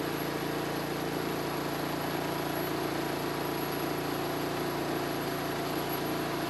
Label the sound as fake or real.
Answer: real